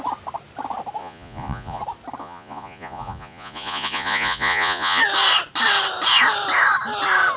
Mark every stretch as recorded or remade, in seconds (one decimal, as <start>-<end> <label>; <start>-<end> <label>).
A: 0.0-1.0 recorded; 1.0-1.8 remade; 1.8-2.2 recorded; 2.2-5.0 remade; 5.0-7.4 recorded